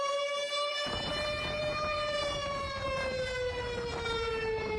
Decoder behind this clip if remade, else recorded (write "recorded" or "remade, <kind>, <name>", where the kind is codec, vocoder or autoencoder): recorded